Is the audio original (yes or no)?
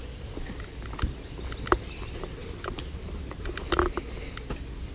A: yes